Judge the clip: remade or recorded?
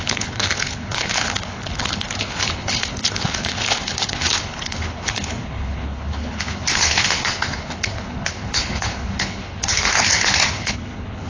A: remade